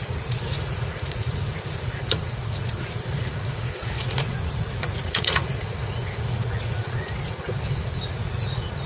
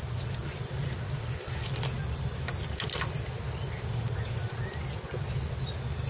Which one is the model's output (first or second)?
first